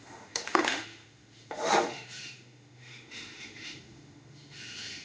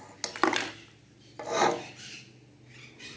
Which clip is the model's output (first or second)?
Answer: first